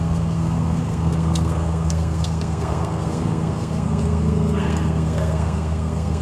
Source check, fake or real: fake